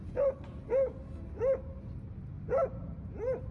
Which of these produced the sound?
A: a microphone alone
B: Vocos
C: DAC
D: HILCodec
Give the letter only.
A